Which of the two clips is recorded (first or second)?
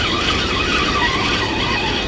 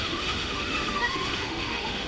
first